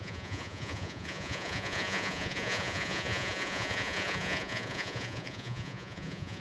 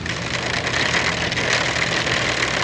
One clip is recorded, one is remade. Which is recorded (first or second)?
second